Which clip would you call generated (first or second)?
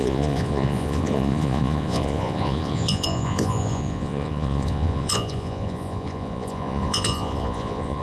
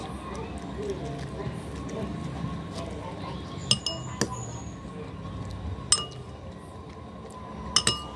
first